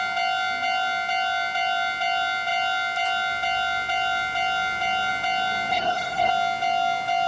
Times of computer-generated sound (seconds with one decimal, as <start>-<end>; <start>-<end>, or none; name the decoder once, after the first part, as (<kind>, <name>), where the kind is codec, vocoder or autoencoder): 5.7-6.3 (codec, SNAC)